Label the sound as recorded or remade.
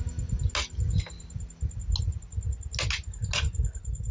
recorded